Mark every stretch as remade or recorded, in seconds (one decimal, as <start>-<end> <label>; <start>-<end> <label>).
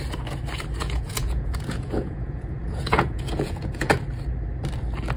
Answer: 0.0-0.8 recorded; 0.8-3.9 remade; 3.9-5.2 recorded